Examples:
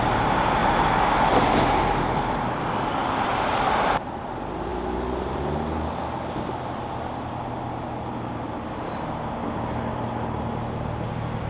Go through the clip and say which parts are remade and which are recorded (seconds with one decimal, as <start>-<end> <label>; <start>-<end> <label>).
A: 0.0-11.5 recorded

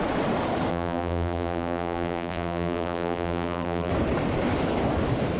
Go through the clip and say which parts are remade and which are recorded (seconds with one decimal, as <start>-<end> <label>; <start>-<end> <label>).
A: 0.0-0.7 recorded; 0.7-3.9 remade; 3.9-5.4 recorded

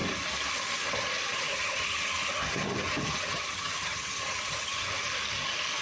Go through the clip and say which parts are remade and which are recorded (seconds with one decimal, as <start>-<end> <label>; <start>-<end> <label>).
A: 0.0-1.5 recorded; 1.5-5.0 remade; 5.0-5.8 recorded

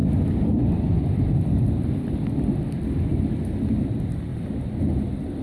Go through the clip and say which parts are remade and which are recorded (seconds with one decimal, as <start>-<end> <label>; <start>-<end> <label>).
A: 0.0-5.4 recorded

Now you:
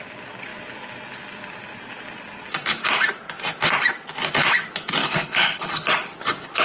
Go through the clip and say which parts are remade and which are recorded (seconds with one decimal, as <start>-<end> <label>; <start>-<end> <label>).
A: 0.0-5.0 recorded; 5.0-5.7 remade; 5.7-6.6 recorded